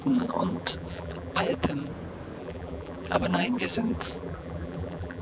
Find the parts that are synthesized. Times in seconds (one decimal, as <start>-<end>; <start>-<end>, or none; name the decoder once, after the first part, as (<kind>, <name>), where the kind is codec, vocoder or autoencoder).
0.0-1.9 (vocoder, BigVGAN v2); 2.4-5.2